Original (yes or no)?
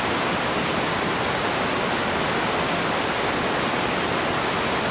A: yes